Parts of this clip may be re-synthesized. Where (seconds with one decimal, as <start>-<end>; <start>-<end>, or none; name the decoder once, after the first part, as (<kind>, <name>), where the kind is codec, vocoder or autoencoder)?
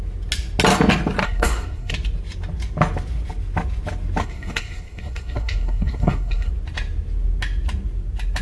1.2-1.9 (codec, SNAC); 4.2-6.5